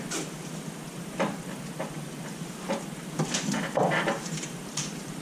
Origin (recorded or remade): remade